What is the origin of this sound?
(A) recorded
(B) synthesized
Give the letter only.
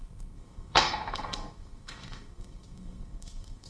B